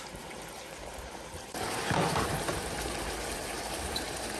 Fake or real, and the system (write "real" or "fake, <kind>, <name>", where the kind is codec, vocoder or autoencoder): fake, vocoder, BigVGAN v2